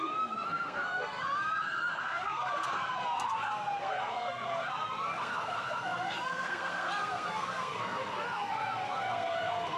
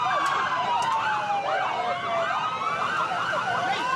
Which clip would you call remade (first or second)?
first